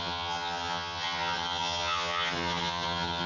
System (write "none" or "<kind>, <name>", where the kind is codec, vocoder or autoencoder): vocoder, HiFi-GAN